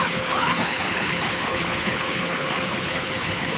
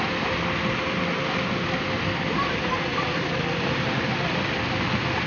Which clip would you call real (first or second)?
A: second